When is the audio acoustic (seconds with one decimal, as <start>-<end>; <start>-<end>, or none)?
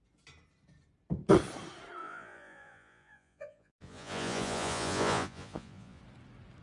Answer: 0.0-2.0; 6.0-6.6